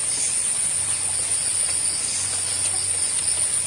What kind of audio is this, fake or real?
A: fake